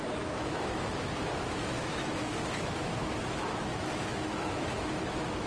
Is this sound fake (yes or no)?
yes